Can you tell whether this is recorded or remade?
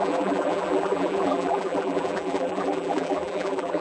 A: remade